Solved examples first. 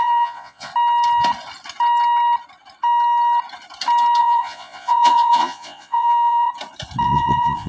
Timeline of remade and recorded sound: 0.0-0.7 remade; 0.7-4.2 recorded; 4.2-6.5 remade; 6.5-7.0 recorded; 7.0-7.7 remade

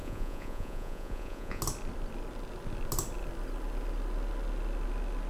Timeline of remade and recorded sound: 0.0-1.6 remade; 1.6-5.3 recorded

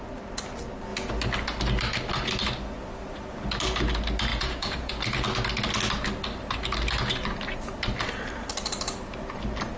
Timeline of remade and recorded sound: 0.0-4.3 recorded; 4.3-4.9 remade; 4.9-9.8 recorded

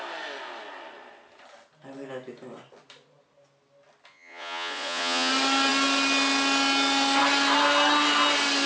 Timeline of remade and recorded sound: 0.0-4.1 recorded; 4.1-5.3 remade; 5.3-8.7 recorded

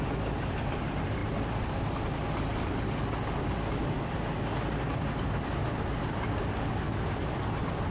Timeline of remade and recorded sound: 0.0-7.9 recorded

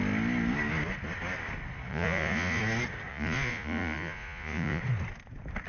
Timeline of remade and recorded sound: 0.0-1.9 recorded; 1.9-2.6 remade; 2.6-3.1 recorded; 3.1-4.8 remade; 4.8-5.7 recorded